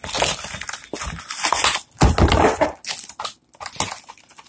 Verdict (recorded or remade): recorded